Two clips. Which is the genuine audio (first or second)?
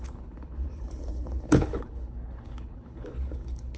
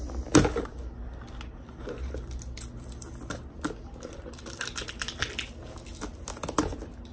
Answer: second